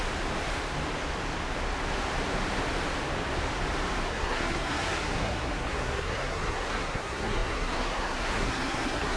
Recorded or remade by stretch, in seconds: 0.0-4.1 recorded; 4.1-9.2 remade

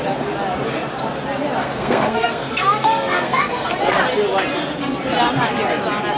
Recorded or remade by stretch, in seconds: 0.0-1.6 recorded; 1.6-3.7 remade; 3.7-6.2 recorded